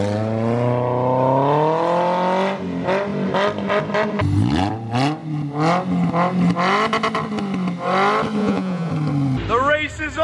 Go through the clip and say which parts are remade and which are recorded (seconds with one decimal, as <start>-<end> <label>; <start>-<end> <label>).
0.0-8.4 recorded; 8.4-8.9 remade; 8.9-10.2 recorded